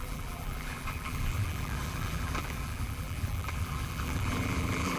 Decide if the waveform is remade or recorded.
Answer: remade